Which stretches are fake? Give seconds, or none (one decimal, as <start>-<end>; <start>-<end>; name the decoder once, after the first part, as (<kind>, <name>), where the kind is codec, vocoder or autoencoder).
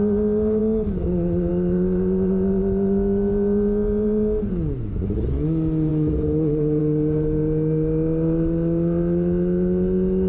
none